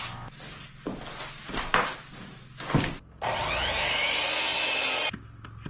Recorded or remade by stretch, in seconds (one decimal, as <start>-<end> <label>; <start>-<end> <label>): 0.0-5.7 recorded